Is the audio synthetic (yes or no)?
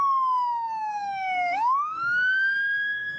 yes